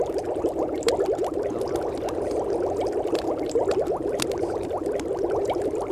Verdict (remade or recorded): recorded